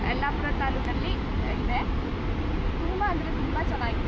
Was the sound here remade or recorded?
recorded